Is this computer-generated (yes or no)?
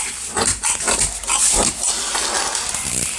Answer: no